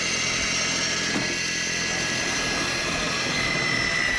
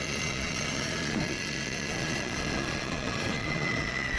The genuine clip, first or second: first